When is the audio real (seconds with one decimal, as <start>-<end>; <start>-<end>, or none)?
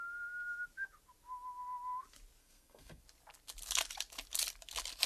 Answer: 0.0-2.4; 3.0-5.1